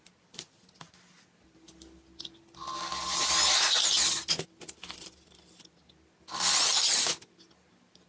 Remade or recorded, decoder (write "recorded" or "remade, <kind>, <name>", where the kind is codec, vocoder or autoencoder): recorded